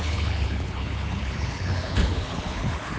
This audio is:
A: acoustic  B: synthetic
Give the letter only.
B